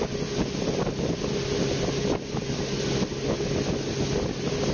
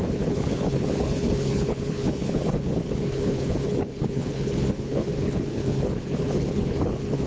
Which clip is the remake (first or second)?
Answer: second